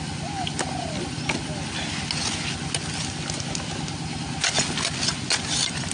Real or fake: real